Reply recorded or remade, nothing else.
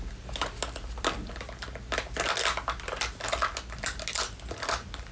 recorded